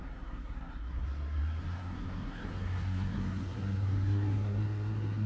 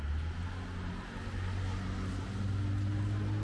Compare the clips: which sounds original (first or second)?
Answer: second